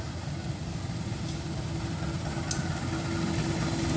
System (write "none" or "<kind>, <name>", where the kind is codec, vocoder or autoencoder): none